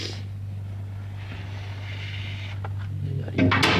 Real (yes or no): yes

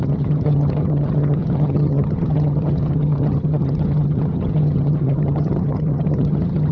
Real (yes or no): no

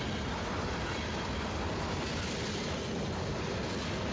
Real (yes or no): yes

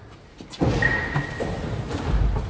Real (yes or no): yes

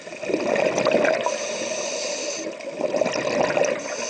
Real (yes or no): yes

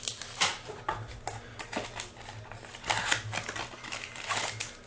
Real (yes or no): yes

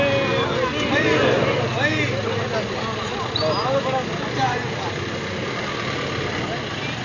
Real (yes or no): yes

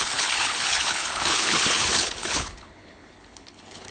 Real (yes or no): no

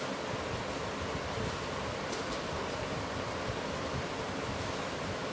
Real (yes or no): yes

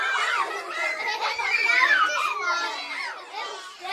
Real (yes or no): yes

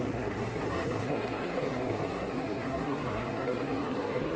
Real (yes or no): no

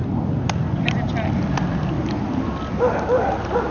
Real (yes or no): yes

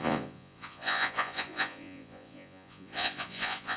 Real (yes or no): no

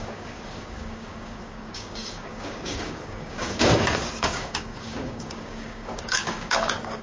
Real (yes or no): no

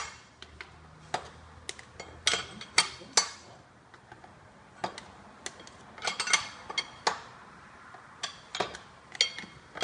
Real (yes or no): yes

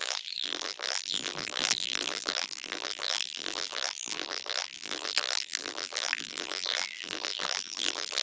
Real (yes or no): no